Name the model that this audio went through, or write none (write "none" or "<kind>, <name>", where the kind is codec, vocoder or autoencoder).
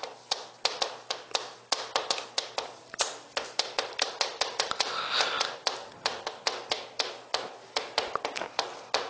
none